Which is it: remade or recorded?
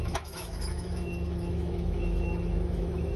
remade